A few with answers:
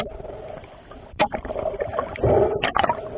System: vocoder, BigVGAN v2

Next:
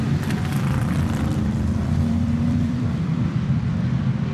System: vocoder, BigVGAN v2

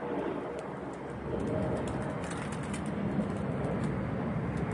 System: vocoder, BigVGAN v2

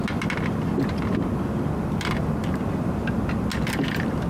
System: none